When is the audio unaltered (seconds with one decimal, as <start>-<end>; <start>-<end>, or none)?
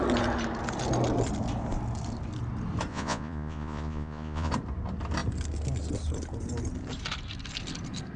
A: 0.0-2.9; 4.5-8.2